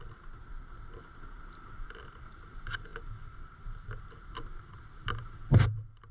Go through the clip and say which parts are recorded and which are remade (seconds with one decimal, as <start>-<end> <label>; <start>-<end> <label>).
0.0-6.1 recorded